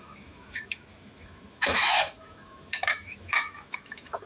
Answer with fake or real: fake